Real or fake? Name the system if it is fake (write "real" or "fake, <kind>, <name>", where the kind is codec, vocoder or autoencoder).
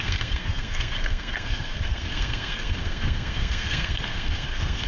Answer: fake, codec, SNAC